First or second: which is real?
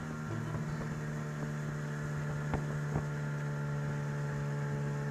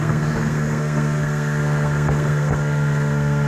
first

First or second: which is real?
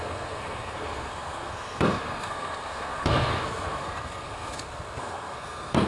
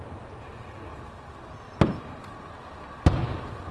second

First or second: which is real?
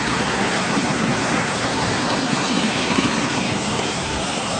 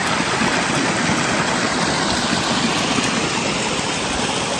second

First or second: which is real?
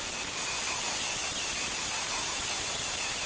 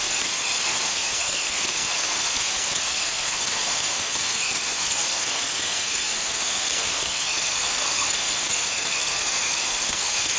first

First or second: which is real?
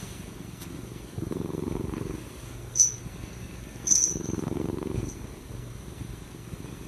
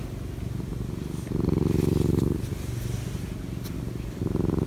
second